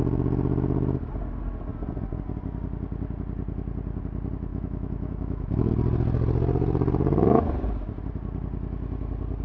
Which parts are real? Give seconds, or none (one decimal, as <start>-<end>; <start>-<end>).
0.0-4.5; 5.7-9.4